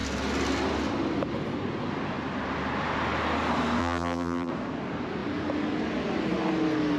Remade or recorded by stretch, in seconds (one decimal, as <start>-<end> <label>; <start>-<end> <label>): 0.0-3.8 recorded; 3.8-4.5 remade; 4.5-7.0 recorded